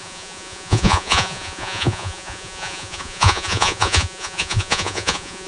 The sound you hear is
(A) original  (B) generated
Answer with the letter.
B